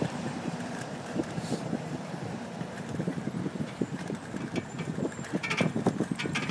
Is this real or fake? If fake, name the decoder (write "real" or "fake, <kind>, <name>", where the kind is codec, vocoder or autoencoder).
fake, vocoder, BigVGAN v2